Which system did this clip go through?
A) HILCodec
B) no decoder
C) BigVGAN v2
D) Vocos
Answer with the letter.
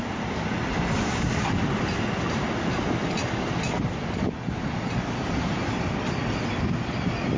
B